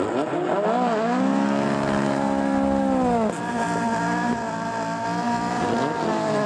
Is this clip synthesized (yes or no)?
no